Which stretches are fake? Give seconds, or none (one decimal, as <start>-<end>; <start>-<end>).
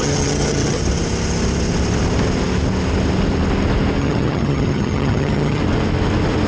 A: 0.0-0.8; 4.0-5.6